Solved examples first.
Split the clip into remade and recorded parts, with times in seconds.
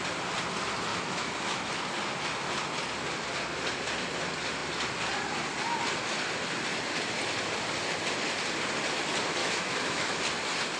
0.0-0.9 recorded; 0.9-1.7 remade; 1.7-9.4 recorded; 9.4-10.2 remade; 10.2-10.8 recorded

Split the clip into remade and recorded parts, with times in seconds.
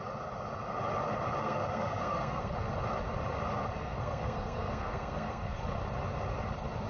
0.0-1.4 recorded; 1.4-2.7 remade; 2.7-3.8 recorded; 3.8-5.6 remade; 5.6-6.9 recorded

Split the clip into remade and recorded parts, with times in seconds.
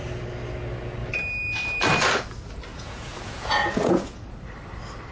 0.0-2.7 recorded; 2.7-4.2 remade; 4.2-5.1 recorded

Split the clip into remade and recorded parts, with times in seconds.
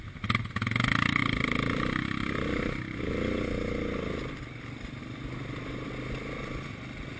0.0-7.2 recorded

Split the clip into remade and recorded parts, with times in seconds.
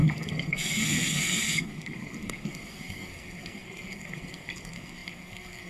0.0-5.7 remade